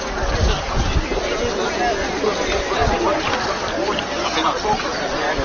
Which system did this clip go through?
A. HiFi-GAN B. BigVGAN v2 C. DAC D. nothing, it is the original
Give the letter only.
D